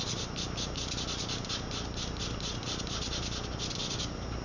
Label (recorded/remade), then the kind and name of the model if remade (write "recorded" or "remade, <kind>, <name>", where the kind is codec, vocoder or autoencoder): recorded